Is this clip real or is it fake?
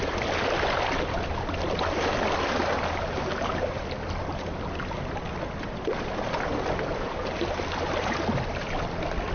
real